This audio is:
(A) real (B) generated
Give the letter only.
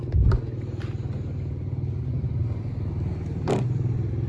A